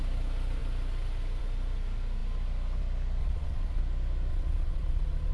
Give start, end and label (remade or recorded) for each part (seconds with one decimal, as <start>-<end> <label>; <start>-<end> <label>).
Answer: 0.0-3.2 recorded; 3.2-3.8 remade; 3.8-4.3 recorded; 4.3-5.3 remade